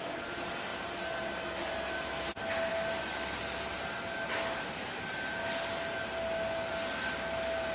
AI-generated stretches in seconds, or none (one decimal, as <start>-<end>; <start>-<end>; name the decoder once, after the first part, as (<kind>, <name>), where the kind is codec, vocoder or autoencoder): none